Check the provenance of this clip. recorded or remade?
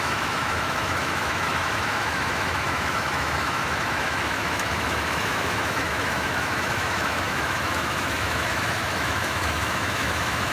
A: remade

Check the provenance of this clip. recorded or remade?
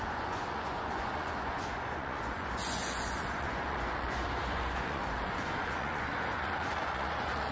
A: remade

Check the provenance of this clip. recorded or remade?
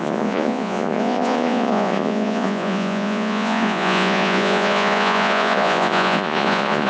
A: remade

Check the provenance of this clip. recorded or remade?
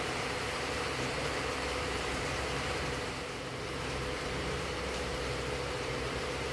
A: remade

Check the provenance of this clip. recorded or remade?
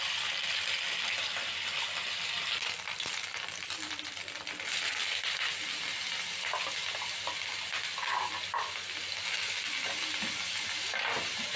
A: recorded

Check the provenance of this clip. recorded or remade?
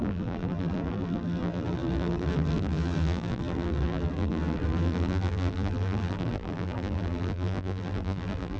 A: remade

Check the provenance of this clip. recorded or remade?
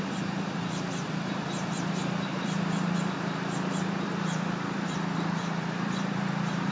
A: remade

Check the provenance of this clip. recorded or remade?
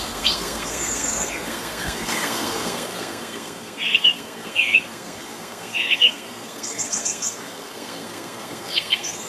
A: remade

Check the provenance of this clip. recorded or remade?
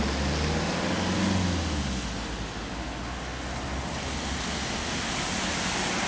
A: recorded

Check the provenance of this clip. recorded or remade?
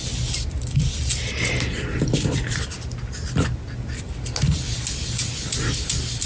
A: recorded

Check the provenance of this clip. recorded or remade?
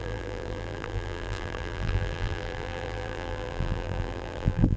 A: remade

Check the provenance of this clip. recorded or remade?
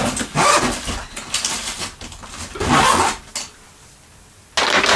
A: recorded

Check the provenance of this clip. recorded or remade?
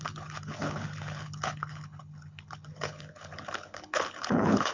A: remade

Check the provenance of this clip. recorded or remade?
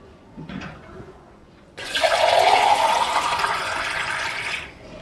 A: remade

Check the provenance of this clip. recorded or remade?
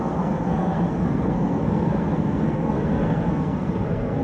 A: remade